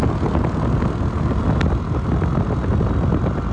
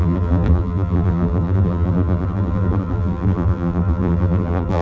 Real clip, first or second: first